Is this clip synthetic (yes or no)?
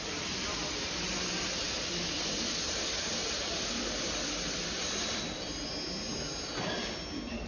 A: yes